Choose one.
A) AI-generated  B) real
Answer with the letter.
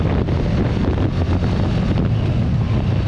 B